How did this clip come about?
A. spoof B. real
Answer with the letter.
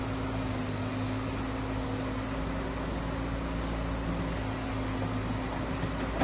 B